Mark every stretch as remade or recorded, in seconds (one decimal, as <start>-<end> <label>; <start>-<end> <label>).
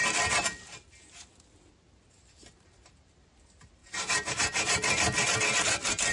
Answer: 0.0-3.8 recorded; 3.8-5.4 remade; 5.4-6.1 recorded